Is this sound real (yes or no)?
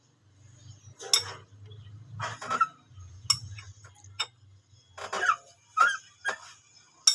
yes